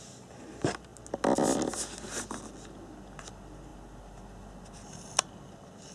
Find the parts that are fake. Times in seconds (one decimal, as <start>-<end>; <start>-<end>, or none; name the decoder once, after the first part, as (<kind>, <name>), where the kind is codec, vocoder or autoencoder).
none